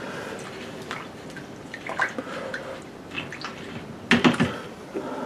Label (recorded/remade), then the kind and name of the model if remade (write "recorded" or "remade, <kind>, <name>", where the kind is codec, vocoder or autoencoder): recorded